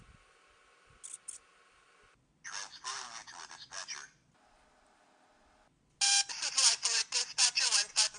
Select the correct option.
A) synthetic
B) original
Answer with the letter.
B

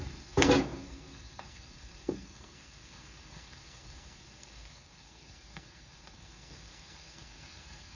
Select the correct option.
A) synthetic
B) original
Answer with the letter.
A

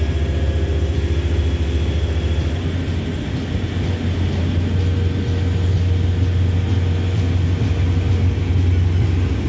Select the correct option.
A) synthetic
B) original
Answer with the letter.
B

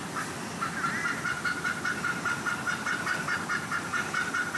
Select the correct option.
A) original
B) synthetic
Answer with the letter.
A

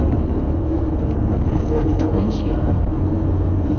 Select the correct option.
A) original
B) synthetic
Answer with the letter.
B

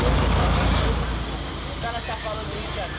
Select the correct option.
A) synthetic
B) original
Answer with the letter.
B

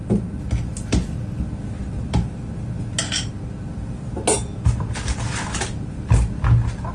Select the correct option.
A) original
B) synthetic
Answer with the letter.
A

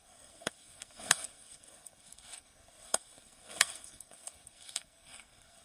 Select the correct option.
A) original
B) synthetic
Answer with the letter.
B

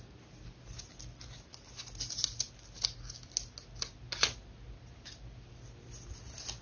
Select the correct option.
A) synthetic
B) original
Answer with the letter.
B